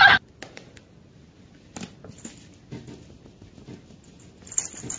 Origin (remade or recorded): recorded